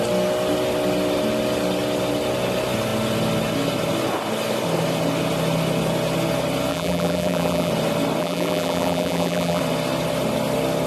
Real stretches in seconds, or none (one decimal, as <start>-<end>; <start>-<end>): 0.0-6.7; 7.7-8.2; 9.6-10.9